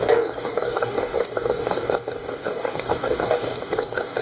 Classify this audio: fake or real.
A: fake